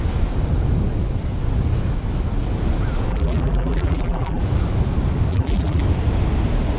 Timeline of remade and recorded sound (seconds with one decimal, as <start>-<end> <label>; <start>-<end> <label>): 0.0-3.1 recorded; 3.1-4.4 remade; 4.4-5.3 recorded; 5.3-5.8 remade; 5.8-6.8 recorded